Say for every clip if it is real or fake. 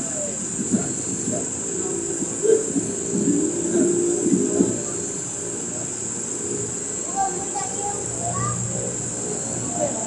real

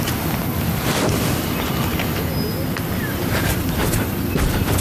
real